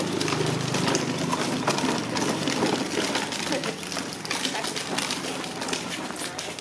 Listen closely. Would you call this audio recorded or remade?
recorded